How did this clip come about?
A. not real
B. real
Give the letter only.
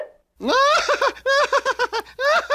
B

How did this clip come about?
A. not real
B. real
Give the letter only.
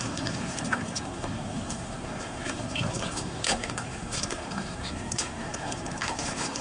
A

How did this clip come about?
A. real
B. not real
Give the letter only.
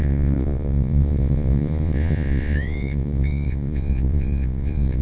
B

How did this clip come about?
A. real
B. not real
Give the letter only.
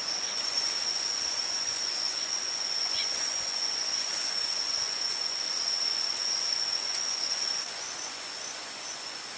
B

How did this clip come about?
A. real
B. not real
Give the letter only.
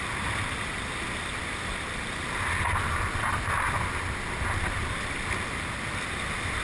A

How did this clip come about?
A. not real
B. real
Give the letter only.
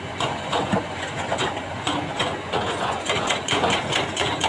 A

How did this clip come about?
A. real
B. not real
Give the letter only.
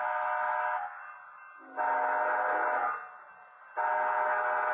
A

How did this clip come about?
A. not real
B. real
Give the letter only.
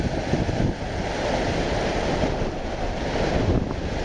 B